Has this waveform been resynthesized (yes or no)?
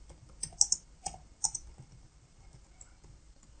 no